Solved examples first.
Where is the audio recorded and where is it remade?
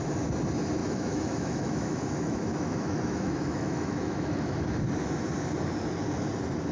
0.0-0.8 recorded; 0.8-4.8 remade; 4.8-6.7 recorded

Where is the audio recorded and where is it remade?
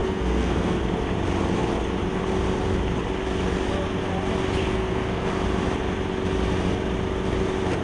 0.0-0.8 remade; 0.8-4.6 recorded; 4.6-5.3 remade; 5.3-7.8 recorded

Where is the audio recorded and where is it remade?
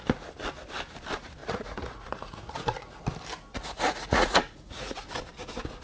0.0-1.4 recorded; 1.4-3.0 remade; 3.0-3.5 recorded; 3.5-5.1 remade; 5.1-5.8 recorded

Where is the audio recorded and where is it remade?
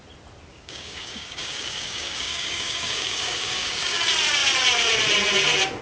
0.0-0.5 recorded; 0.5-4.0 remade; 4.0-5.8 recorded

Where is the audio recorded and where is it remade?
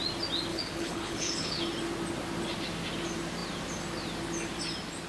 0.0-0.5 recorded; 0.5-1.6 remade; 1.6-5.1 recorded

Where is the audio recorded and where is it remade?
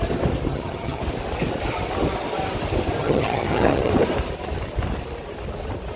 0.0-0.5 recorded; 0.5-1.0 remade; 1.0-3.0 recorded; 3.0-3.9 remade; 3.9-6.0 recorded